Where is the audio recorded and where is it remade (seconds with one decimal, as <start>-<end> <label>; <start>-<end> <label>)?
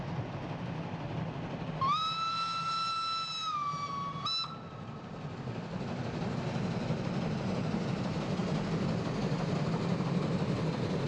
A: 0.0-11.1 recorded